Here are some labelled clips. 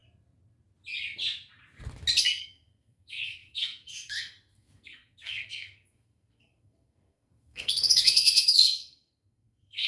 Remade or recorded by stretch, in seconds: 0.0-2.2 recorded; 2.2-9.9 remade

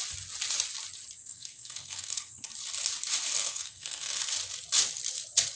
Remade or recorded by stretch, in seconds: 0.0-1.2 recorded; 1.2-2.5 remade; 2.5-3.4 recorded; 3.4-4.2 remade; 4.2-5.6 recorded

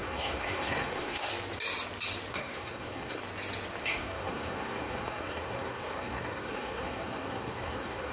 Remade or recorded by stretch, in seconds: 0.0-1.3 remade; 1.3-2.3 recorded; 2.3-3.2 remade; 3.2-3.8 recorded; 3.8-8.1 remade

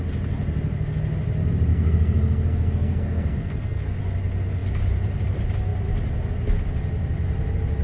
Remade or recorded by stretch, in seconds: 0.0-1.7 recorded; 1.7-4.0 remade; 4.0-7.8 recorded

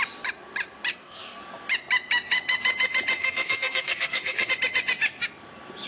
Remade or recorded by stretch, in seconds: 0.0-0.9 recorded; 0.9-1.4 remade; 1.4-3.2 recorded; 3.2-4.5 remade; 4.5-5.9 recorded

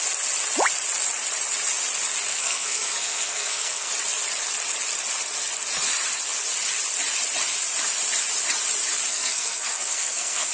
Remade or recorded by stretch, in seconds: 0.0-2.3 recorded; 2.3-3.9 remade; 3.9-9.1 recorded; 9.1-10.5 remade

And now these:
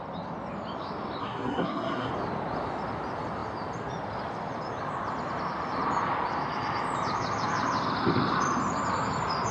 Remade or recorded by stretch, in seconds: 0.0-1.2 recorded; 1.2-2.1 remade; 2.1-9.5 recorded